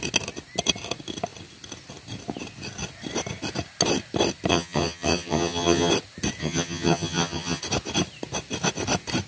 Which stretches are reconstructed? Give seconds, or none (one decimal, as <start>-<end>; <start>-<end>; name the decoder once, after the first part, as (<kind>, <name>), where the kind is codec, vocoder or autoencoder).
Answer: 4.5-5.9 (vocoder, HiFi-GAN); 6.4-7.6